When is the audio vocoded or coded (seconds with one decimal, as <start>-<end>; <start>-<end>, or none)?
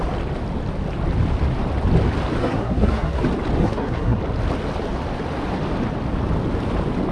2.4-3.2; 3.6-4.2